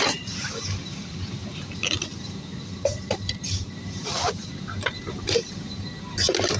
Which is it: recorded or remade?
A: remade